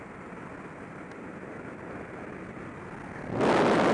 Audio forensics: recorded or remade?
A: recorded